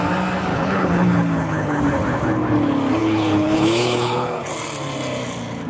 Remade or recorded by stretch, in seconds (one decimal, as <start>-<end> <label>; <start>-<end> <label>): 0.0-0.5 recorded; 0.5-1.8 remade; 1.8-3.0 recorded; 3.0-4.5 remade; 4.5-5.7 recorded